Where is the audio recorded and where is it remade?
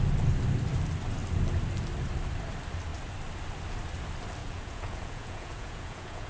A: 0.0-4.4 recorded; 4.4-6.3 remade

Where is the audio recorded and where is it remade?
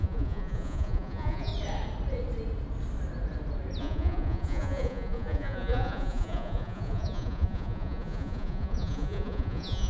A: 0.0-1.5 remade; 1.5-3.8 recorded; 3.8-9.9 remade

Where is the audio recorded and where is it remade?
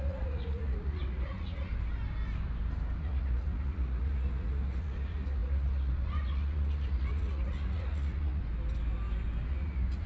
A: 0.0-1.7 remade; 1.7-3.0 recorded; 3.0-8.4 remade; 8.4-9.5 recorded; 9.5-10.1 remade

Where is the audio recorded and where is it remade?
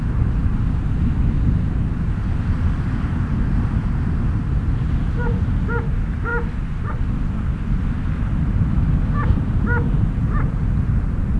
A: 0.0-11.4 recorded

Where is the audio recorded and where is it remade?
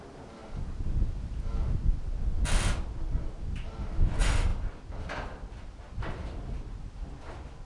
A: 0.0-7.6 recorded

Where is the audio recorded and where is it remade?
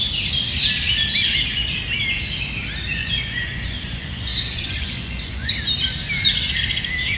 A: 0.0-3.0 recorded; 3.0-5.5 remade; 5.5-7.2 recorded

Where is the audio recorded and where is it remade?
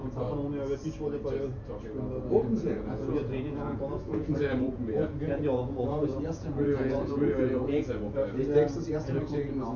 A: 0.0-2.3 recorded; 2.3-8.2 remade; 8.2-8.9 recorded; 8.9-9.8 remade